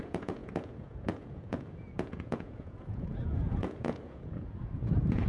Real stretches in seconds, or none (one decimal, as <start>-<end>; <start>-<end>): none